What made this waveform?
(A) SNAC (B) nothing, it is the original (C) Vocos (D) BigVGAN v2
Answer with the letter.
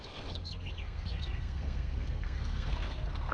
A